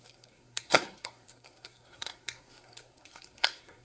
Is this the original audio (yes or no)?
no